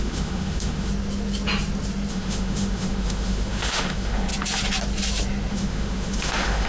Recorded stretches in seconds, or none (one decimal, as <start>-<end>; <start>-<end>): 0.9-2.1; 4.3-5.5